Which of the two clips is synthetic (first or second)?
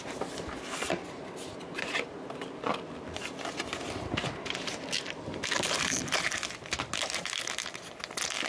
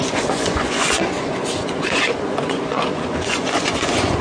second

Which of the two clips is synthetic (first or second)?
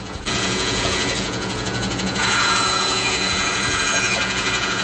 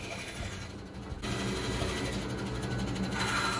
first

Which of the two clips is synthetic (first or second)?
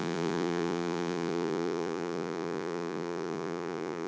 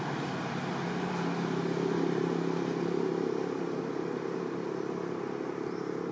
first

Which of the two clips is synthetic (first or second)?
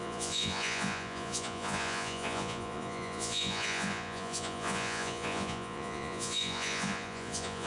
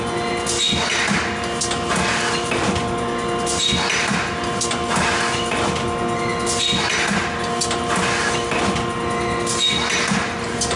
first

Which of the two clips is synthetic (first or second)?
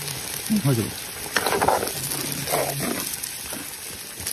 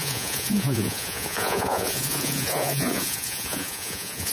second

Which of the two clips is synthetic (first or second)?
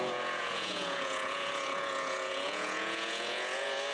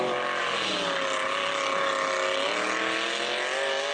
first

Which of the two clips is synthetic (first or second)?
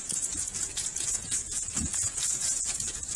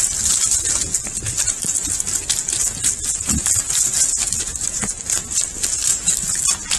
first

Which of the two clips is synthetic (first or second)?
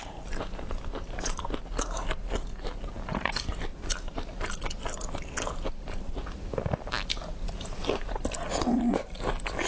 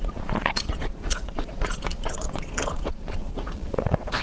second